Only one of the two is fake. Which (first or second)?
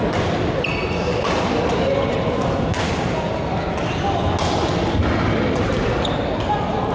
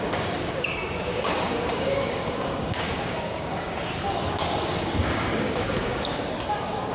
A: second